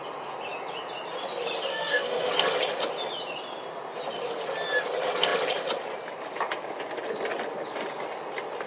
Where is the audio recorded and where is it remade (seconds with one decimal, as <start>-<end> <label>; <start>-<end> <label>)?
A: 0.0-1.7 recorded; 1.7-2.3 remade; 2.3-8.7 recorded